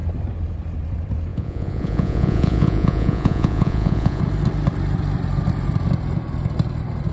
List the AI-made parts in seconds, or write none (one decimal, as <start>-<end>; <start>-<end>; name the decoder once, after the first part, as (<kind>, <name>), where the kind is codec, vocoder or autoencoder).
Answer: 1.3-4.2 (vocoder, Vocos)